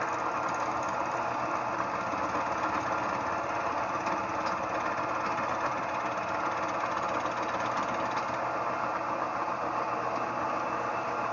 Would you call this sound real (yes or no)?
yes